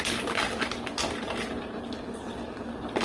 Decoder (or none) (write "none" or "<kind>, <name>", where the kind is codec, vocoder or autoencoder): none